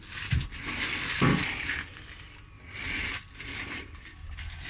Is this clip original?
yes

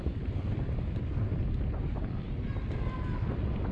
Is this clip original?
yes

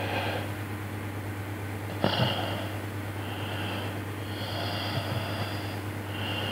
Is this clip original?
yes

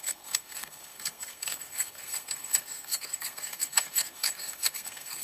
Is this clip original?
no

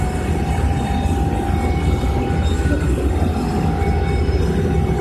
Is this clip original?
yes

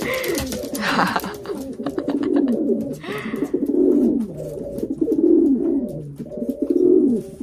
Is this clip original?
yes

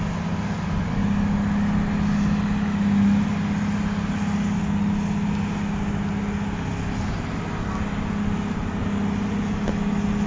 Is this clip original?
yes